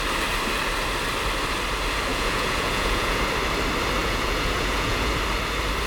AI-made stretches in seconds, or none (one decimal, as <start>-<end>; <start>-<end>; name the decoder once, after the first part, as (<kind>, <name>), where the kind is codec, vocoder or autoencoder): 2.1-3.2 (vocoder, Vocos); 4.0-5.1